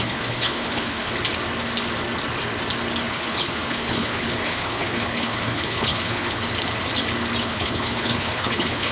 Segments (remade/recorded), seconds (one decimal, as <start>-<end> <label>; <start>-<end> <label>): 0.0-1.1 remade; 1.1-3.1 recorded; 3.1-6.4 remade; 6.4-7.4 recorded; 7.4-8.9 remade